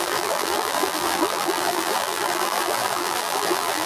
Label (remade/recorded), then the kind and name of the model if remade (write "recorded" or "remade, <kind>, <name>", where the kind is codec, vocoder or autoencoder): remade, vocoder, BigVGAN v2